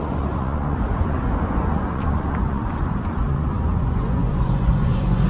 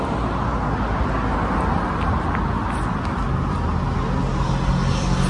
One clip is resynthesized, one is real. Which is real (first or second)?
second